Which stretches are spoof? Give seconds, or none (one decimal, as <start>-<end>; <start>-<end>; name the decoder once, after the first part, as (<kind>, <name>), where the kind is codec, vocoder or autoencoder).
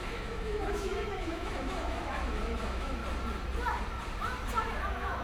0.0-3.0 (autoencoder, DAC-VAE); 4.8-5.2